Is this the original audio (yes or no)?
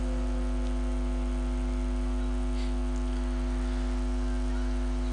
yes